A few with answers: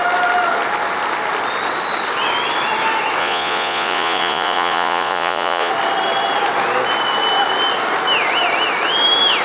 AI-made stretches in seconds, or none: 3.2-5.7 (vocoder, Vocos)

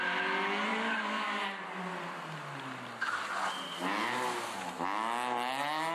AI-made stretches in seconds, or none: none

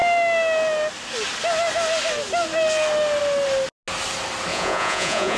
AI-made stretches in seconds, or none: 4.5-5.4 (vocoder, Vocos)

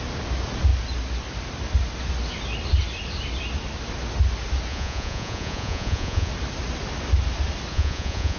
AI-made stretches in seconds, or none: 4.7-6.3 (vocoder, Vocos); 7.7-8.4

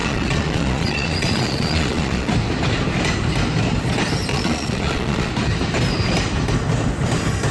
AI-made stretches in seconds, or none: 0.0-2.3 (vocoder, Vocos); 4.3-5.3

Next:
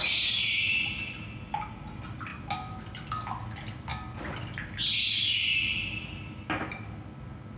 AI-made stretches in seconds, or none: none

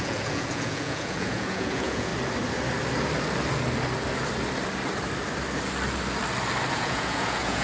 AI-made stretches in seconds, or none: 0.0-2.1 (vocoder, Vocos); 6.7-7.6

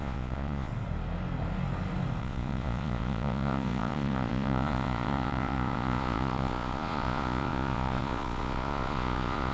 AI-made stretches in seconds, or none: 0.0-0.7 (vocoder, Vocos); 2.2-9.5